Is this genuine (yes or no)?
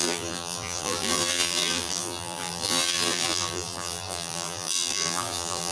no